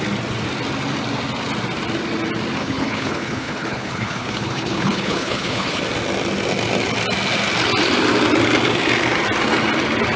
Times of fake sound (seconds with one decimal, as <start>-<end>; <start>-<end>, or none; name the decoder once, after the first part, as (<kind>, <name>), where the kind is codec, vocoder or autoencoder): 2.6-5.8 (codec, HILCodec)